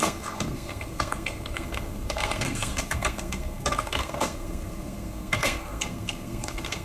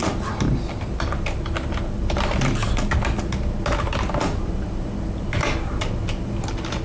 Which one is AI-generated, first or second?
first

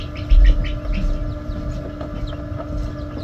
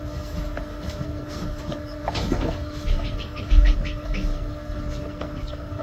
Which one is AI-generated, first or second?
second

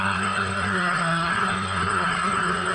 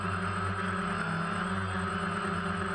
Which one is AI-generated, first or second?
first